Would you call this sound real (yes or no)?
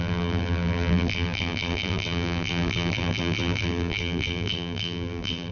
no